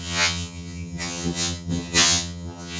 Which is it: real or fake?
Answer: fake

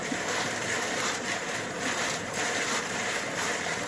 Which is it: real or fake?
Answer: fake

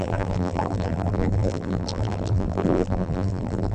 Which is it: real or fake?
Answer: fake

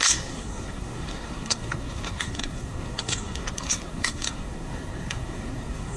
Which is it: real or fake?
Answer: fake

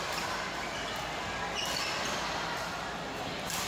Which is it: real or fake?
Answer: real